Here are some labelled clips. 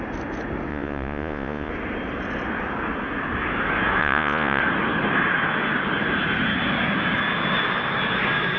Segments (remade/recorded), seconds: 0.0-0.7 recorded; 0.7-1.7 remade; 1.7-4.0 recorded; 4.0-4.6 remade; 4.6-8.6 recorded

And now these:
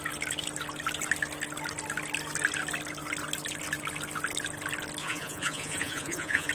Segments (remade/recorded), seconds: 0.0-5.0 recorded; 5.0-6.5 remade